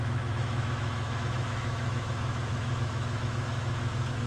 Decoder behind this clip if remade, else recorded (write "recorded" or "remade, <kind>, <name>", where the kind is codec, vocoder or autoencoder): remade, autoencoder, DAC-VAE